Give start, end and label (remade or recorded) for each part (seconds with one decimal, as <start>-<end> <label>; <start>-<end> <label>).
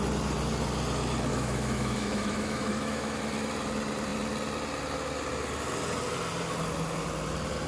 0.0-1.3 recorded; 1.3-3.2 remade; 3.2-7.7 recorded